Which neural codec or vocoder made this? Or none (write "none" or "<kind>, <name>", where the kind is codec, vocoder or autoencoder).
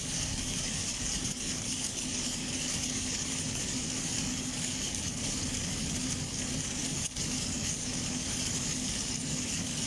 codec, DAC